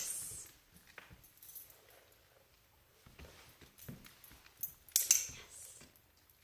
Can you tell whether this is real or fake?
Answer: real